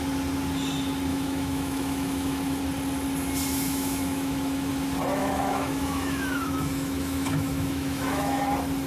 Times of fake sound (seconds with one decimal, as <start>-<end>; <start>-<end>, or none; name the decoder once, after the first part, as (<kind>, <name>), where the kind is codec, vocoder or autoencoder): 1.1-2.6 (autoencoder, DAC-VAE); 3.5-4.7; 5.2-8.4